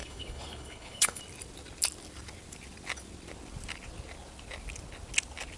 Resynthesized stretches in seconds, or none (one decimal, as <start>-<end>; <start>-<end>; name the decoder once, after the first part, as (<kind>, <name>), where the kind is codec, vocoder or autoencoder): 0.0-1.2 (codec, HILCodec)